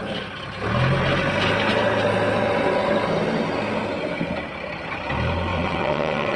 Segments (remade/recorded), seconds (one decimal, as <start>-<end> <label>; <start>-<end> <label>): 0.0-5.5 recorded; 5.5-6.4 remade